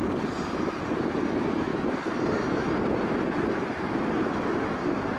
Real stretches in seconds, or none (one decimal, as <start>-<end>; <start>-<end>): 0.0-5.2